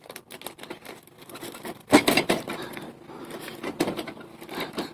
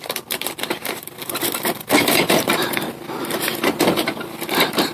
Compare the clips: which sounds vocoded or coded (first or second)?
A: second